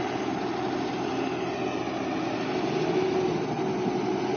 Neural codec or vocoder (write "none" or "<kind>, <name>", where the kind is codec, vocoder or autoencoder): none